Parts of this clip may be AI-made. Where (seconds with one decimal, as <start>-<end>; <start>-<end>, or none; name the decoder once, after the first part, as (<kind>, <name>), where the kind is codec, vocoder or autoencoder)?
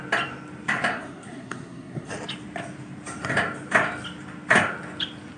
0.9-2.1 (codec, SNAC)